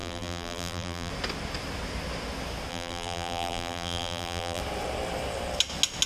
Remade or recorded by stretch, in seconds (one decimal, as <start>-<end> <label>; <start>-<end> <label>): 0.0-1.1 remade; 1.1-2.7 recorded; 2.7-4.6 remade; 4.6-6.1 recorded